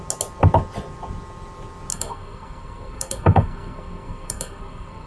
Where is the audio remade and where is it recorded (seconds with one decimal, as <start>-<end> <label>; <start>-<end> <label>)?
0.0-1.9 recorded; 1.9-5.1 remade